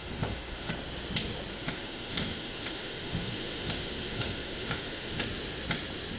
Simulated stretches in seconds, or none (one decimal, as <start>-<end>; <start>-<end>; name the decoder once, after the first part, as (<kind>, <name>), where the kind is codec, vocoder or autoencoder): 0.0-0.7 (autoencoder, DAC-VAE); 1.5-5.2